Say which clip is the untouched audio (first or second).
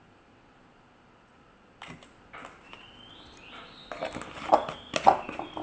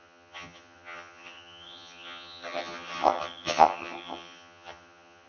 first